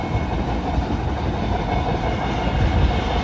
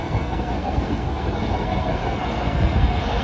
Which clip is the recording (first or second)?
first